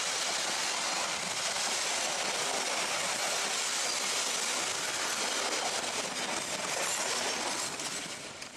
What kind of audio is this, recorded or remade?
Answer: recorded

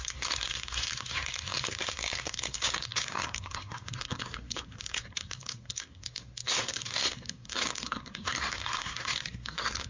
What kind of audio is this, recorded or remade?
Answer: remade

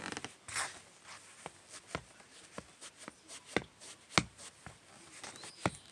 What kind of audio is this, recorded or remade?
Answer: recorded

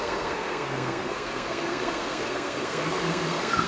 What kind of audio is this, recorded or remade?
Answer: remade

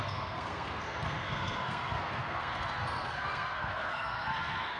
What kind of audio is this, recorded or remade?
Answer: remade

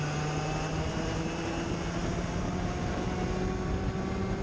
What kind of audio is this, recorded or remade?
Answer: recorded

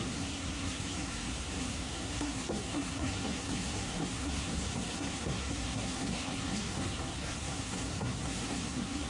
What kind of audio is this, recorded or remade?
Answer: remade